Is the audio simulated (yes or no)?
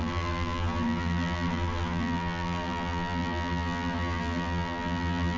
yes